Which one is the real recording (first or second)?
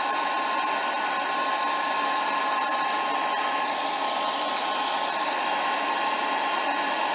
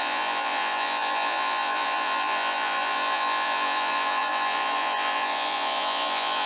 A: first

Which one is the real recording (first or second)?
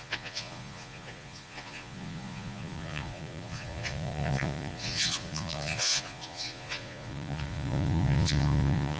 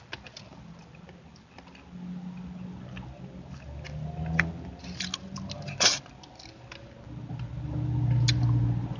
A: second